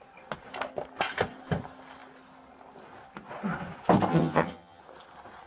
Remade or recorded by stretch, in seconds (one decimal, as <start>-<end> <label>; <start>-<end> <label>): 0.0-4.1 recorded; 4.1-4.8 remade; 4.8-5.5 recorded